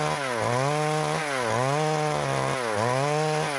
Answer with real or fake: real